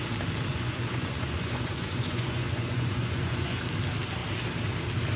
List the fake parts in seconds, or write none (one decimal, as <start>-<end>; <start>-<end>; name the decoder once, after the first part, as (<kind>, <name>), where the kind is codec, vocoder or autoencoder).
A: 0.5-3.6 (vocoder, Vocos)